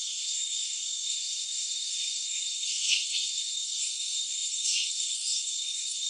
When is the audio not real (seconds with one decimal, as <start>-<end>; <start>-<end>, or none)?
0.0-6.1